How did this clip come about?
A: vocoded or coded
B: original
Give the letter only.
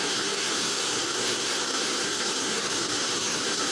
A